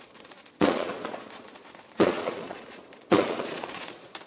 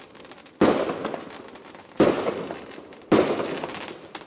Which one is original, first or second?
second